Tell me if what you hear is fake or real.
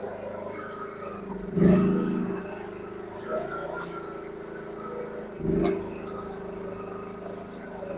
real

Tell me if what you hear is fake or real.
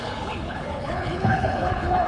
fake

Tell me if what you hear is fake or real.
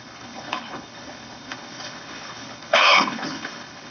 fake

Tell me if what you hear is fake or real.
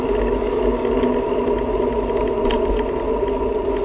real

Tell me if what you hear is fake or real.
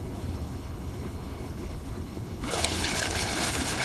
fake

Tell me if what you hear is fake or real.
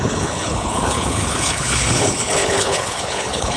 fake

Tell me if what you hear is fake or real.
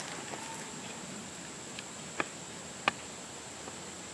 real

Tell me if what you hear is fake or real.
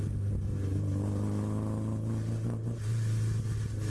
real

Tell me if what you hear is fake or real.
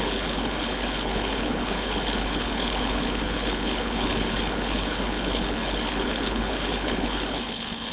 fake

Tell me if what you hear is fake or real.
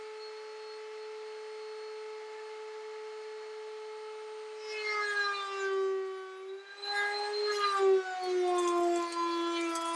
real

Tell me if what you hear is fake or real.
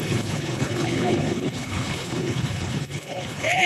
fake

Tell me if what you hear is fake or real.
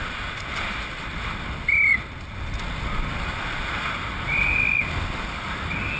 real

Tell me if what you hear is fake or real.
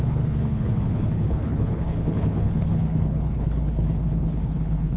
fake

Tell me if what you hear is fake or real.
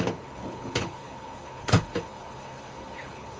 fake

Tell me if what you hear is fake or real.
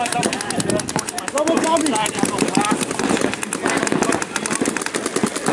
real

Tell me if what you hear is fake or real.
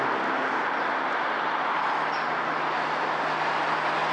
real